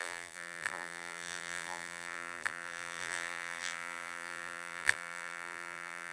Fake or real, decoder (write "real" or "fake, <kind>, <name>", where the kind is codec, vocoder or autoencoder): fake, vocoder, BigVGAN v2